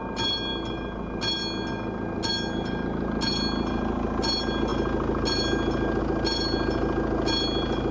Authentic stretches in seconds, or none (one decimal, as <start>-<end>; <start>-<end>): 0.0-7.9